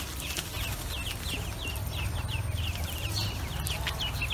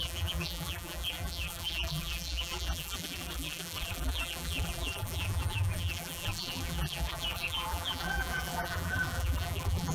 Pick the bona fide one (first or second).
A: first